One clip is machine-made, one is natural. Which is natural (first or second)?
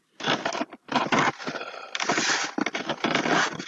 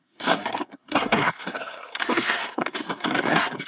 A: first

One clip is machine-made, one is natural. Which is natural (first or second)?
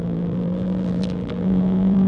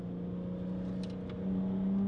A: second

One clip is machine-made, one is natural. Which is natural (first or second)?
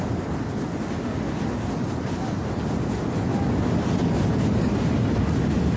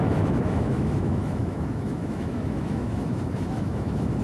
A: first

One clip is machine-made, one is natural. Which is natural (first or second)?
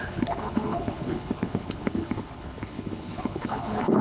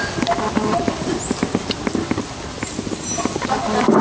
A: second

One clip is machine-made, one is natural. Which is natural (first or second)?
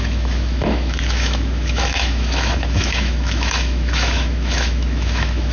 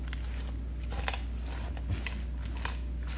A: second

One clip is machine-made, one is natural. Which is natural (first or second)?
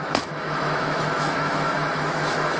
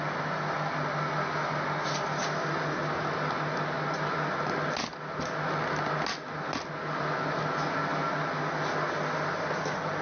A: second